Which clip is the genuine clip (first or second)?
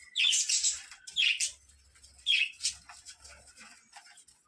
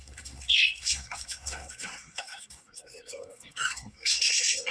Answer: first